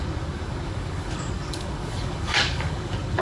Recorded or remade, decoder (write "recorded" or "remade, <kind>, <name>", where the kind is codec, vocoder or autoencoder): remade, codec, DAC